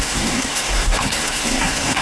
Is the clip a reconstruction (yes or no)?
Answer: yes